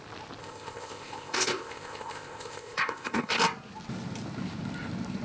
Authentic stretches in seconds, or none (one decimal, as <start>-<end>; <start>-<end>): 0.0-0.4; 3.4-5.2